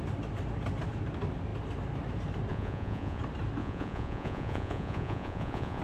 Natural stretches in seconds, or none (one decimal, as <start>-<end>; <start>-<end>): 0.0-2.5; 3.2-3.6